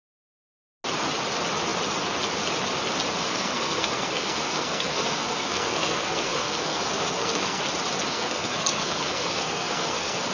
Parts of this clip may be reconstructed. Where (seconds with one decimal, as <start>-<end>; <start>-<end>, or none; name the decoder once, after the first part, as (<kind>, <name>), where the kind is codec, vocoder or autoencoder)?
3.2-7.6 (codec, SNAC); 8.1-10.3